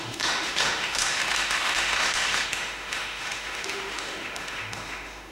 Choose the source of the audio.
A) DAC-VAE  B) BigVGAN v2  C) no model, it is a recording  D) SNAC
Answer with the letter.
A